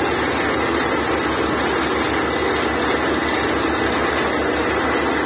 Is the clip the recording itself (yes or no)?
yes